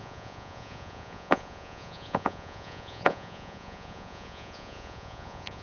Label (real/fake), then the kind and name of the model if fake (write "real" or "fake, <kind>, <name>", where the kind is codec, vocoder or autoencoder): fake, vocoder, Vocos